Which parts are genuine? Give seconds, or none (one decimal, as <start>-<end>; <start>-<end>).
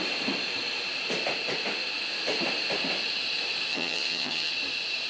0.0-3.7; 4.5-5.1